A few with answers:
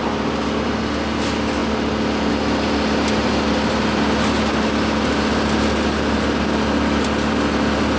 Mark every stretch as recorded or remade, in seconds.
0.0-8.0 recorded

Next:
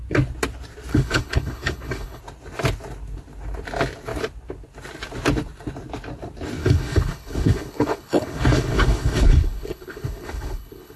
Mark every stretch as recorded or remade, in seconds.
0.0-0.9 recorded; 0.9-2.2 remade; 2.2-6.6 recorded; 6.6-11.0 remade

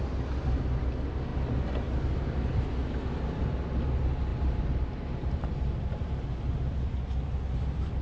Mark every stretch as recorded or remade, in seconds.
0.0-4.3 recorded; 4.3-6.3 remade; 6.3-8.0 recorded

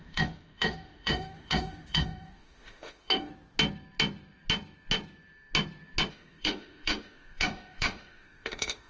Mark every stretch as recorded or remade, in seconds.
0.0-3.3 remade; 3.3-6.1 recorded; 6.1-8.9 remade

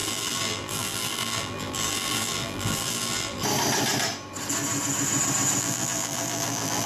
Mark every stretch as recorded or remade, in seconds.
0.0-3.4 remade; 3.4-5.6 recorded; 5.6-6.9 remade

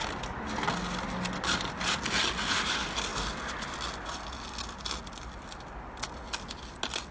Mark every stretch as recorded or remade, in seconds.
0.0-2.7 recorded; 2.7-3.1 remade; 3.1-7.1 recorded

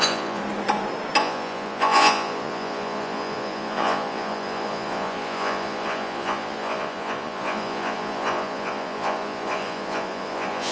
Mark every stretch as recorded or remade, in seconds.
0.0-0.4 remade; 0.4-1.2 recorded; 1.2-10.7 remade

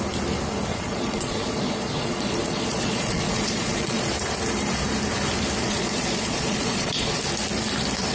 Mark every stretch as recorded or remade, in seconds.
0.0-0.7 recorded; 0.7-4.1 remade; 4.1-5.6 recorded; 5.6-7.2 remade; 7.2-8.1 recorded